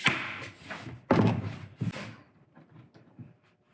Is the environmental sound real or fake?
fake